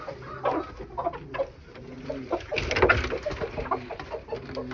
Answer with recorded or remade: recorded